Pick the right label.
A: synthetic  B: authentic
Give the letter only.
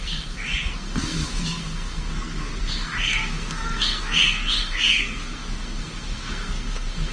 A